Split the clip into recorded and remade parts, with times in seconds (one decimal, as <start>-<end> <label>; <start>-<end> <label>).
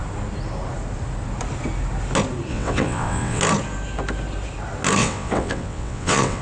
0.0-2.5 recorded; 2.5-3.4 remade; 3.4-5.0 recorded; 5.0-6.4 remade